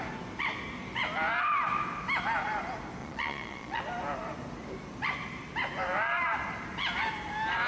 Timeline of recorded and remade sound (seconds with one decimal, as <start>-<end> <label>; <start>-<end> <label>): 0.0-3.0 recorded; 3.0-3.8 remade; 3.8-7.7 recorded